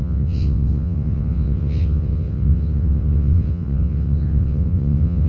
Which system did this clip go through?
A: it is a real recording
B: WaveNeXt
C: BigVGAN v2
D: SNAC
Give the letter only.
B